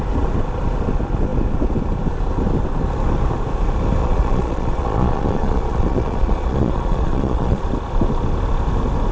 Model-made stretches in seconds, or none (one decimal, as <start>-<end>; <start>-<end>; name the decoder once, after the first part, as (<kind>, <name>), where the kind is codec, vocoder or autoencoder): 4.0-7.6 (vocoder, Vocos)